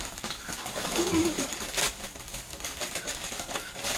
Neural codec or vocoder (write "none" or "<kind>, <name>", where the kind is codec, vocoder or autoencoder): codec, DAC